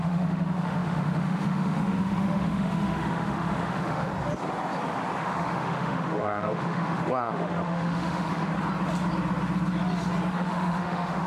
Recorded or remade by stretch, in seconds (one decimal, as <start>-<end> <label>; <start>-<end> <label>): 0.0-4.1 remade; 4.1-5.2 recorded; 5.2-8.5 remade; 8.5-10.3 recorded; 10.3-11.3 remade